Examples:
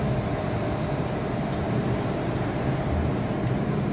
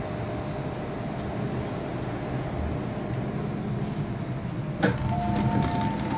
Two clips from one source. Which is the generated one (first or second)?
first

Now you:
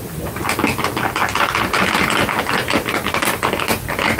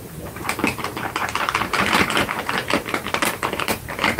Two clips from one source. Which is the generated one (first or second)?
second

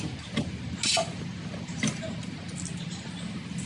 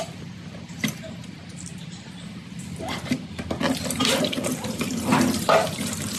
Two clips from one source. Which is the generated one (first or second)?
second